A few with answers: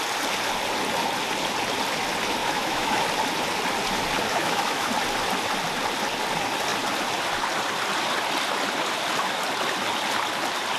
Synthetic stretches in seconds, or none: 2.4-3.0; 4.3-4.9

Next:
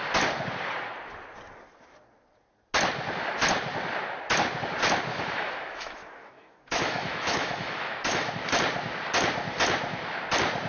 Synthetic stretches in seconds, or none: 5.1-8.3

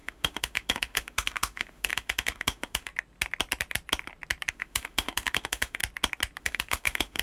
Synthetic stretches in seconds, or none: 0.0-2.9; 4.5-5.8; 6.4-7.2

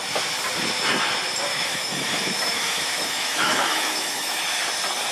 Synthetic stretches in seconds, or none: 1.5-4.6

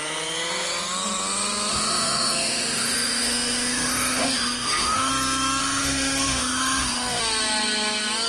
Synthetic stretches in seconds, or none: 1.7-5.1; 5.6-7.2